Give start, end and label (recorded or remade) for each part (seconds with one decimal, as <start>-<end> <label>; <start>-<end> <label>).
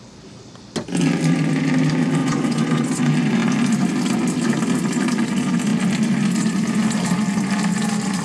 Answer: 0.0-2.2 recorded; 2.2-3.0 remade; 3.0-8.2 recorded